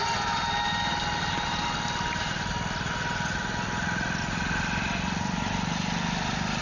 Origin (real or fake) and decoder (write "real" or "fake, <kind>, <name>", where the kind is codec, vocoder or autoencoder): real